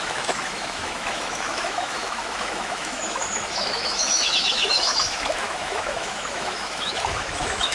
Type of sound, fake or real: fake